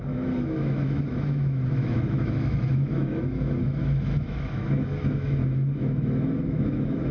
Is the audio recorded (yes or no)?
no